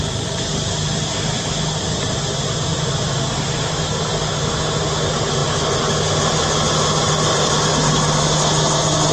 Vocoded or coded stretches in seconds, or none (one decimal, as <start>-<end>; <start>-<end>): none